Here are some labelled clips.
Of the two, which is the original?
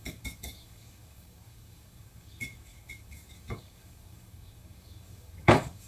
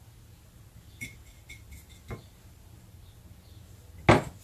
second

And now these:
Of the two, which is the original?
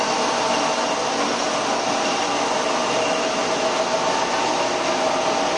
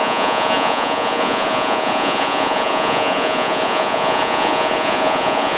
first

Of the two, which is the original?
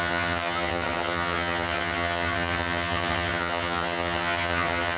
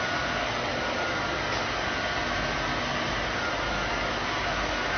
second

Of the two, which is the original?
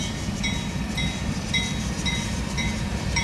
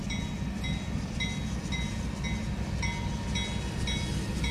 second